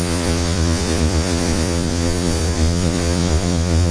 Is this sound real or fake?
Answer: fake